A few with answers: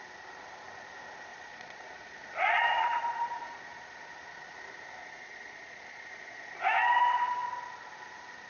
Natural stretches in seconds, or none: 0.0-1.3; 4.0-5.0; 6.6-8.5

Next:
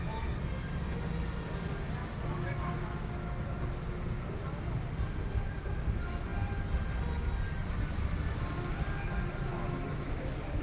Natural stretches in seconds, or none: 0.0-10.6

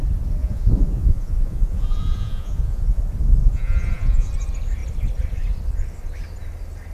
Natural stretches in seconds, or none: 0.0-0.4; 3.0-3.4; 4.3-6.9